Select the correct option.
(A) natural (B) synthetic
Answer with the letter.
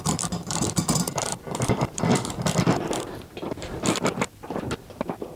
B